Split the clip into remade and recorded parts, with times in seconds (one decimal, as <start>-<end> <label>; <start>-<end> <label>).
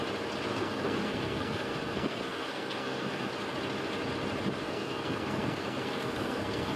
0.0-0.5 recorded; 0.5-3.3 remade; 3.3-4.6 recorded; 4.6-6.8 remade